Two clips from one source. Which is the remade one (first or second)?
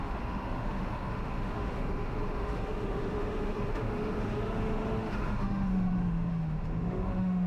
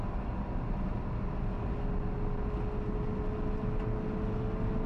first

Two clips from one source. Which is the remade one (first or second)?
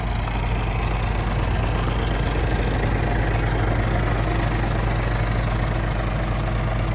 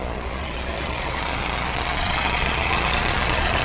second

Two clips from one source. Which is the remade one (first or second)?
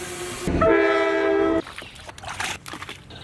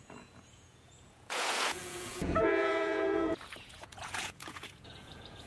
second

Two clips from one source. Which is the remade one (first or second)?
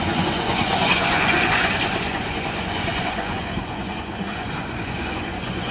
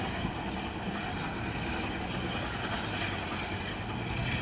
first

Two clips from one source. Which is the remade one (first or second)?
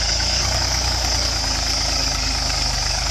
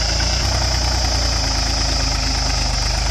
first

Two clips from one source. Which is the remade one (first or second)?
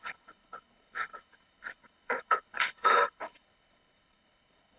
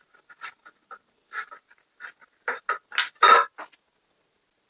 first